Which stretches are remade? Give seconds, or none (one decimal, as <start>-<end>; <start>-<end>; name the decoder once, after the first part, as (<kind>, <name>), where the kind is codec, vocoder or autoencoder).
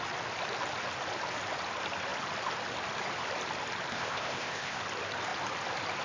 3.9-4.8 (codec, ZipCodec)